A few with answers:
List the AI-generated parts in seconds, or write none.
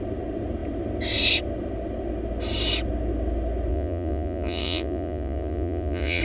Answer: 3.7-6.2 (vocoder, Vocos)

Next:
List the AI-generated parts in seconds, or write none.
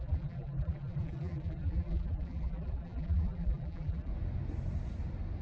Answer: 0.0-4.1 (vocoder, BigVGAN v2)